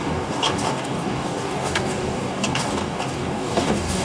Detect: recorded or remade remade